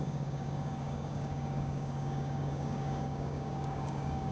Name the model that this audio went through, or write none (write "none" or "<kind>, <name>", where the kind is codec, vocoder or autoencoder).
codec, DAC